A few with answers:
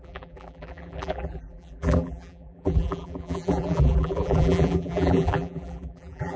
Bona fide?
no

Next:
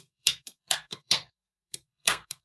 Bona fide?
no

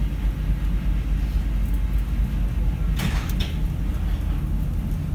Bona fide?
yes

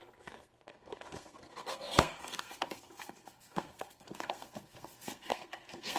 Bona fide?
no